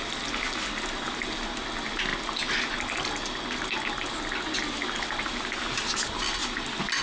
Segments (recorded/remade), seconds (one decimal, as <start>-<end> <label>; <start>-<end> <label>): 0.0-7.0 recorded